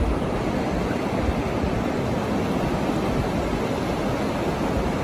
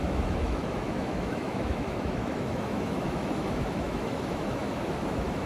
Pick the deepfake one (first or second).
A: second